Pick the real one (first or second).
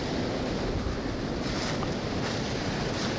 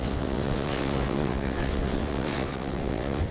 first